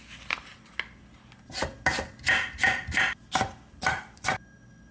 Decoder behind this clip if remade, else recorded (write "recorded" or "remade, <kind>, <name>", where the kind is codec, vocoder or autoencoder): recorded